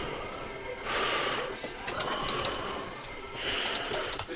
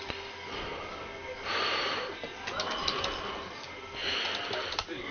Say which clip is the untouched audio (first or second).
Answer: second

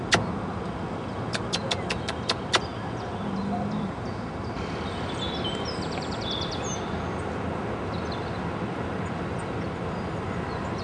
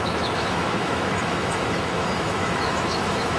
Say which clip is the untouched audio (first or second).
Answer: first